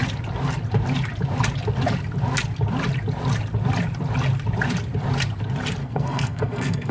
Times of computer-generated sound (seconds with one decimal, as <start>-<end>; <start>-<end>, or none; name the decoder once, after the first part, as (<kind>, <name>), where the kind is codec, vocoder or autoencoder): 5.8-6.9 (codec, SNAC)